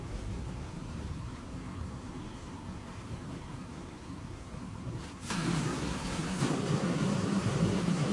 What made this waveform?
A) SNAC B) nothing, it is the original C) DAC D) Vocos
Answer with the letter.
A